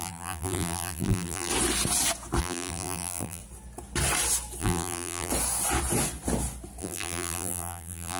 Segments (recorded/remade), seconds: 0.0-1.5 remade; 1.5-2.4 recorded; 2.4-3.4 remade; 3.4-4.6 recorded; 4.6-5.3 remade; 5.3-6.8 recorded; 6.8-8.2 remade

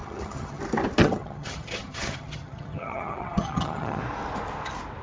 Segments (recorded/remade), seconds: 0.0-0.6 remade; 0.6-1.0 recorded; 1.0-4.0 remade; 4.0-5.0 recorded

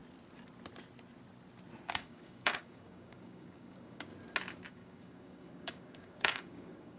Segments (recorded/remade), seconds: 0.0-1.9 recorded; 1.9-4.1 remade; 4.1-4.7 recorded; 4.7-7.0 remade

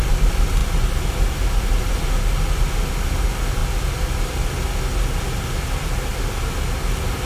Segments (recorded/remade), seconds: 0.0-7.3 recorded

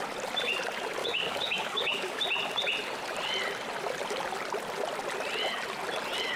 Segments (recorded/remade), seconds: 0.0-1.0 recorded; 1.0-2.2 remade; 2.2-6.4 recorded

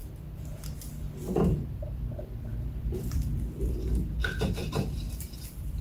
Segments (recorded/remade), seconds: 0.0-2.3 recorded; 2.3-5.8 remade

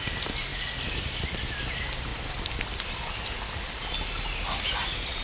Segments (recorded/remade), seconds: 0.0-5.2 recorded